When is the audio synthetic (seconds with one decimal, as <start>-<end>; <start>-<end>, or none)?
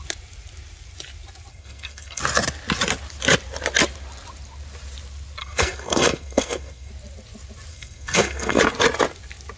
1.5-2.2; 5.4-6.9; 7.7-8.6